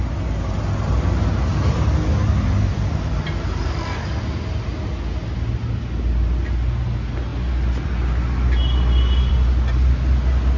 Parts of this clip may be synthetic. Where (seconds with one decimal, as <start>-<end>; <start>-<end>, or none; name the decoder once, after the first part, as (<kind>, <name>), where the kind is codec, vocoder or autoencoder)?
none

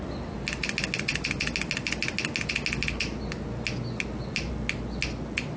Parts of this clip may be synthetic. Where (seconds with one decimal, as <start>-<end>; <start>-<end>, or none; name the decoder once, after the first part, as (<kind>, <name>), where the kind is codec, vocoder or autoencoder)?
none

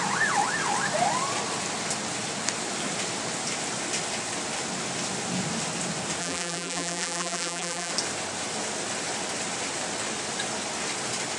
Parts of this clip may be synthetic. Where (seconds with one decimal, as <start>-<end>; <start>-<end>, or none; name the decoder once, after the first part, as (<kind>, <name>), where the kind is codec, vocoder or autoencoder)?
6.2-7.9 (vocoder, BigVGAN v2)